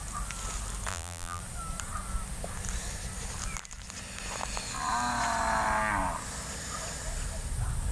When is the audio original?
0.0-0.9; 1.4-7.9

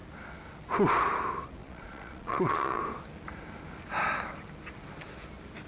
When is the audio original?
0.0-1.6; 2.8-5.7